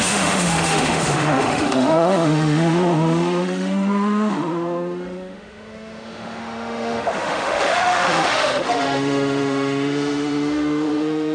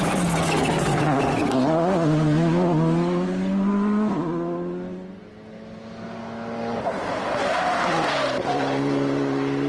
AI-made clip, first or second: first